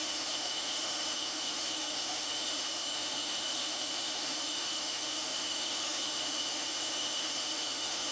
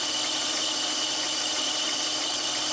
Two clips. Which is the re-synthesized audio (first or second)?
first